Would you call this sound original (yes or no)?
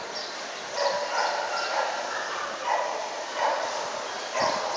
no